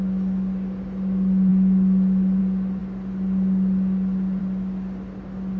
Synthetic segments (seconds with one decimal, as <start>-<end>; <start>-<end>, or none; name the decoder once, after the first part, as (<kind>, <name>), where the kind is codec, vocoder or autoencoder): none